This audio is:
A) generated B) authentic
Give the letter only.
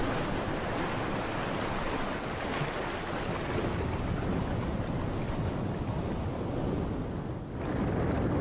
B